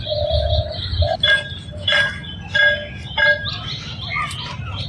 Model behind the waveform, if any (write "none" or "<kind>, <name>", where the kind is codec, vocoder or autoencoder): none